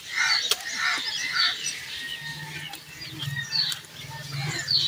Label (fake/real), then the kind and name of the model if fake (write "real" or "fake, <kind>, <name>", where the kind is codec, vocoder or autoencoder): real